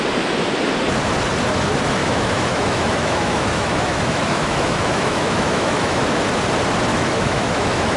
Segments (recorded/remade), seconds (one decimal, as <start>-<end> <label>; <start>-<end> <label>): 0.0-2.0 recorded; 2.0-6.2 remade; 6.2-6.9 recorded; 6.9-8.0 remade